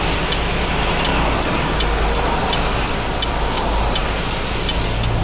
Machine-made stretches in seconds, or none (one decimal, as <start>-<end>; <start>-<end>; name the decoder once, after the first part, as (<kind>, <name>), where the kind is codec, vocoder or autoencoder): none

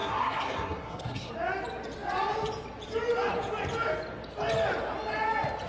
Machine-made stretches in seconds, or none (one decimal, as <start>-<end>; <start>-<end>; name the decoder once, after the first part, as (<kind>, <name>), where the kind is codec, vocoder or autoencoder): 0.0-1.3 (codec, SNAC)

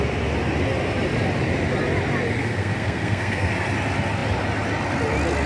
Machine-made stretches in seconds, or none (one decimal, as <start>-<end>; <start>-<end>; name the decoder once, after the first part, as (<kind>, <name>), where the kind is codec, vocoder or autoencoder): 2.4-3.5 (codec, SNAC)

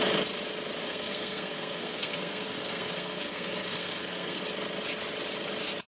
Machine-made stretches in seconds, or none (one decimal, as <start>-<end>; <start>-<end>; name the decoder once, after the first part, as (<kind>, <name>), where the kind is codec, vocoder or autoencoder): 0.8-4.4 (codec, SNAC)

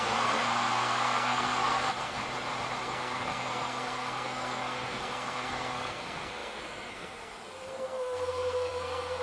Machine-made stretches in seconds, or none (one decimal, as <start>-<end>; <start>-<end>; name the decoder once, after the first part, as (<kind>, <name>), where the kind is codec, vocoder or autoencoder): 0.0-2.2 (codec, SNAC); 2.8-9.2

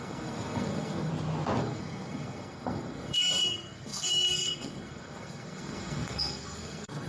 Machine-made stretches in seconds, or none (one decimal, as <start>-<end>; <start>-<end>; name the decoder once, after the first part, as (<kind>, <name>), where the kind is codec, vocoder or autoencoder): 0.0-1.1 (codec, SNAC); 1.6-7.1

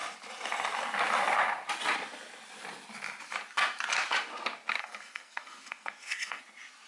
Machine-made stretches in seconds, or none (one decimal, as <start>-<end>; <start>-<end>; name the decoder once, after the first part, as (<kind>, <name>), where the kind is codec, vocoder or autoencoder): 4.8-6.4 (codec, SNAC)

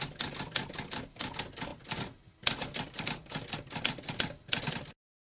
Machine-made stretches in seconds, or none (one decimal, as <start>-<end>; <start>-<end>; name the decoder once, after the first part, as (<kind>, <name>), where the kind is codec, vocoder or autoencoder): none